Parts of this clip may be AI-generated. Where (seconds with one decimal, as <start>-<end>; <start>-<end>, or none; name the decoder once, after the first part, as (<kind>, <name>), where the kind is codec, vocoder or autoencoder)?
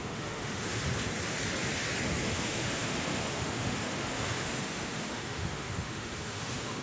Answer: 0.0-0.8 (autoencoder, DAC-VAE); 2.2-6.8